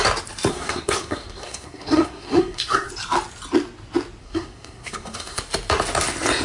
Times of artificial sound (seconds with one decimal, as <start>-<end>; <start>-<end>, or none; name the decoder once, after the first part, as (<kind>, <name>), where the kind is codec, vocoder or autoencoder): 0.5-2.9 (codec, SNAC); 4.2-5.4